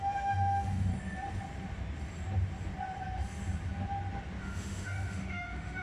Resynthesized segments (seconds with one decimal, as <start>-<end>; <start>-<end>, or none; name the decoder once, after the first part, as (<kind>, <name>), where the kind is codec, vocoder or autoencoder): 0.0-0.9 (autoencoder, DAC-VAE); 4.4-5.8